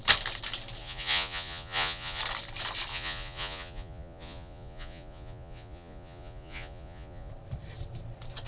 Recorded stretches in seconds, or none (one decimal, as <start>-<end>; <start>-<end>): 0.0-0.8; 2.2-2.9; 7.3-8.5